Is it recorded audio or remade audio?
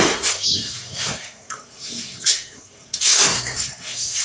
remade